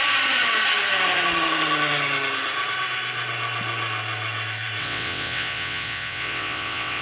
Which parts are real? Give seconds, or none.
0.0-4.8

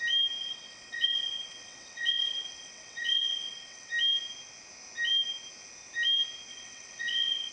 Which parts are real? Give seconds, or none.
0.0-0.4; 3.9-6.5

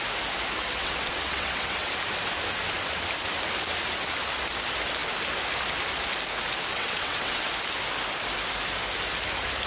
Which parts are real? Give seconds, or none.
0.0-0.8; 1.9-6.7; 7.5-9.7